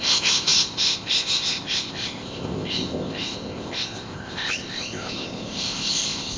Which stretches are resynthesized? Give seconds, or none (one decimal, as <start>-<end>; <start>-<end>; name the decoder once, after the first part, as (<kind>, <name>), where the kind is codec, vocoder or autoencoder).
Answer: 0.0-6.4 (codec, ZipCodec)